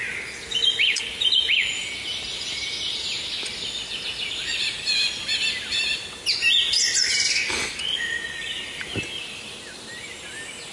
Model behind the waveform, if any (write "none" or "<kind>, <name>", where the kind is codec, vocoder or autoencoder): none